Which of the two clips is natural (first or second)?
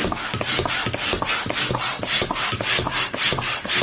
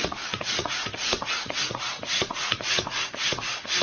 first